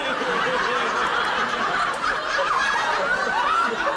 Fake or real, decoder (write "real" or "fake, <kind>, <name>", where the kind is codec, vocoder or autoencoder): real